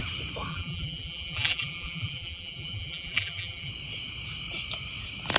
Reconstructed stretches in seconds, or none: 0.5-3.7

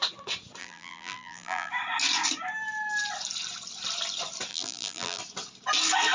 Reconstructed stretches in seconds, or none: 0.6-1.7; 4.5-5.2

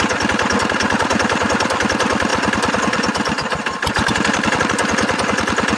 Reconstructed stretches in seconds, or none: 2.3-4.6

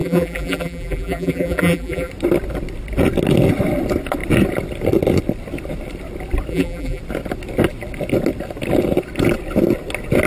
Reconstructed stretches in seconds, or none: 0.0-2.1; 6.5-7.0

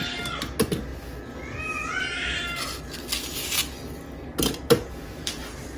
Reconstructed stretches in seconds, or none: 4.3-5.3

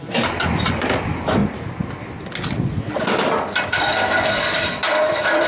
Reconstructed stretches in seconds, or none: 0.0-1.4; 3.7-5.5

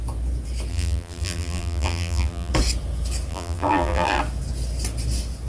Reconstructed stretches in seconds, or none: 0.7-2.5; 3.3-4.2

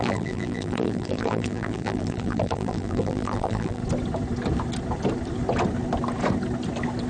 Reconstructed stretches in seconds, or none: 0.0-3.8